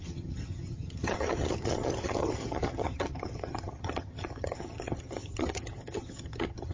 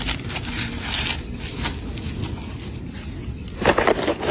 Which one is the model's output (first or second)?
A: first